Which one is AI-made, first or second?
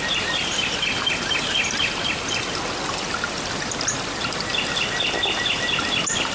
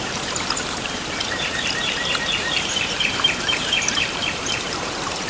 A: second